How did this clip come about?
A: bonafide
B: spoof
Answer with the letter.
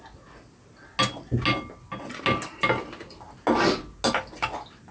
A